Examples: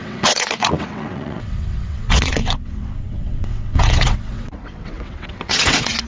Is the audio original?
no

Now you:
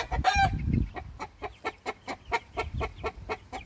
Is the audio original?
yes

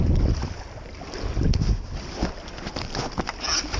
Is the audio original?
yes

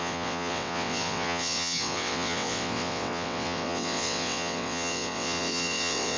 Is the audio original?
no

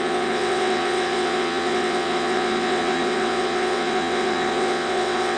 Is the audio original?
no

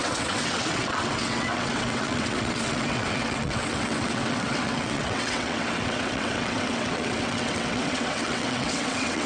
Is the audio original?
no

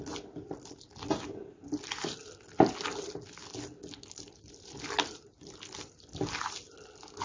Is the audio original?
yes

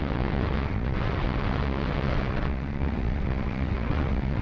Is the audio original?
no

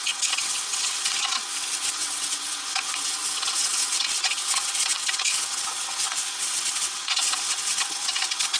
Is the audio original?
no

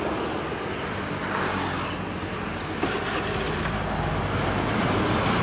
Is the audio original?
yes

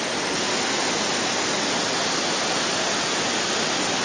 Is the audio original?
yes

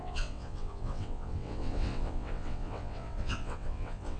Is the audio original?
no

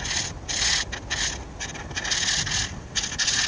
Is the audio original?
yes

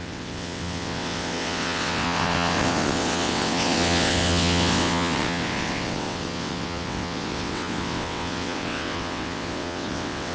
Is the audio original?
no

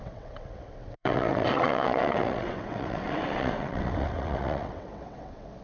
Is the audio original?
no